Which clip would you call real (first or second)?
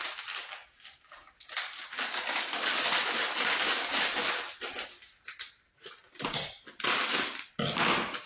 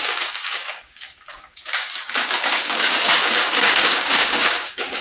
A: first